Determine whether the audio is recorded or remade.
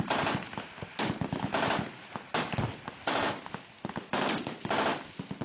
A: recorded